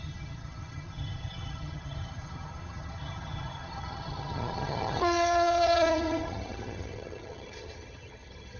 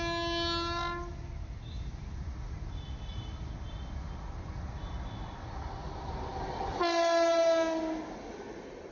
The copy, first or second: first